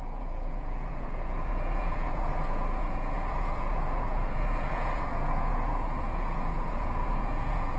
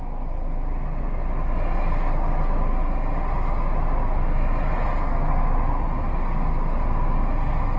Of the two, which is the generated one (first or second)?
first